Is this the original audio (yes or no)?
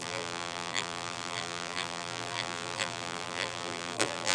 no